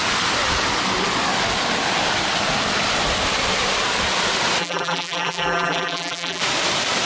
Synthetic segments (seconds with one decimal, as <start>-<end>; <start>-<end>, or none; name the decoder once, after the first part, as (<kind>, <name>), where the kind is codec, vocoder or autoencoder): 4.6-6.4 (vocoder, BigVGAN v2)